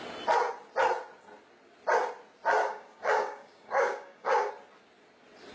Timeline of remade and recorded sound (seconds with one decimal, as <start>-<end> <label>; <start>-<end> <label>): 0.0-2.6 recorded; 2.6-4.5 remade; 4.5-5.5 recorded